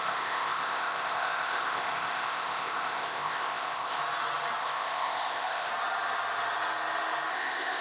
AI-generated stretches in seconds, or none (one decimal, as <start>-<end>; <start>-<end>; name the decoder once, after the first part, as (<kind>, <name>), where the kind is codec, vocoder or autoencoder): 0.0-4.0 (codec, ZipCodec); 4.6-5.7; 7.3-7.8